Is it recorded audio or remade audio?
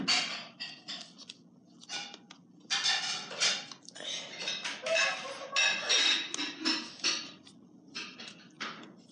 recorded